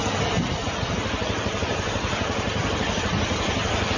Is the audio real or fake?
real